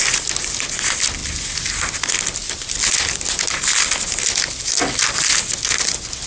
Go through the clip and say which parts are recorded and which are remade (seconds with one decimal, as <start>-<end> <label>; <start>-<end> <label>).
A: 0.0-6.3 recorded